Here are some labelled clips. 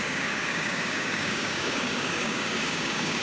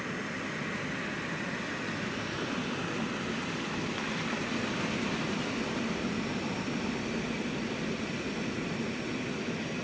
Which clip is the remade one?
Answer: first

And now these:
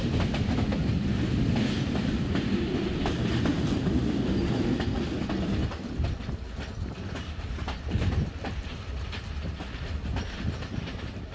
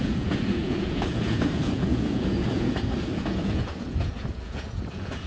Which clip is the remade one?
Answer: second